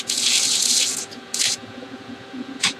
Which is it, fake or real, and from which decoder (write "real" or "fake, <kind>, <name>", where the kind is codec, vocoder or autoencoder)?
fake, vocoder, Vocos